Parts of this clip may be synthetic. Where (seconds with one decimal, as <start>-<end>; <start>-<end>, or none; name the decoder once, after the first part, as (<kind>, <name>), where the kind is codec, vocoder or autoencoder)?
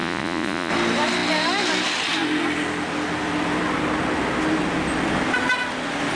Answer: 0.0-0.7 (vocoder, Vocos)